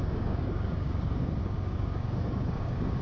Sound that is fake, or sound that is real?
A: fake